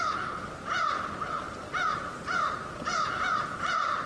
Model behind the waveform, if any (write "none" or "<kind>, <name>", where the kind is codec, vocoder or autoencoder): none